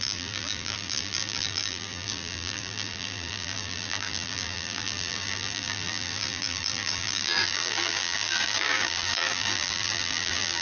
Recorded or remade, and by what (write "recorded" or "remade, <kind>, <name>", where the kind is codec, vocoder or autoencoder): remade, vocoder, BigVGAN v2